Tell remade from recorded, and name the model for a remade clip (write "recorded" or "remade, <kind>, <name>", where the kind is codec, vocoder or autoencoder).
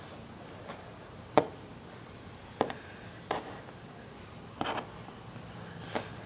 recorded